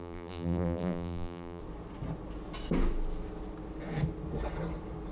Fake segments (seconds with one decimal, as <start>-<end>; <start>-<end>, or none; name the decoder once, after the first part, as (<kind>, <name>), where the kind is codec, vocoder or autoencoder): 0.0-1.6 (vocoder, BigVGAN v2)